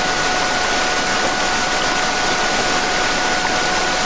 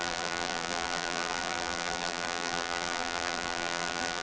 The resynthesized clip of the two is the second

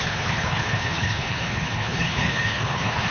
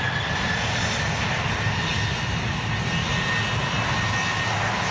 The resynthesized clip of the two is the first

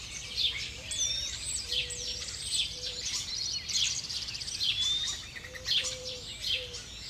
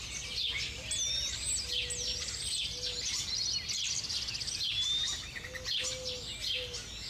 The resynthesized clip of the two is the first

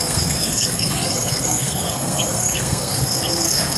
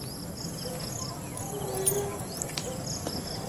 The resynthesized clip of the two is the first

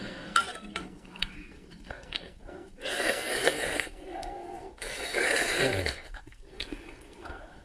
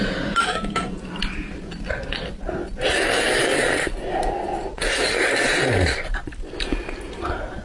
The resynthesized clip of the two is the first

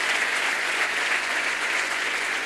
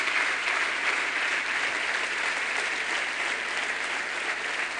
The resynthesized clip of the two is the first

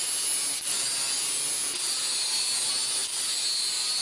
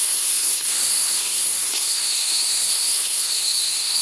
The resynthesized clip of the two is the second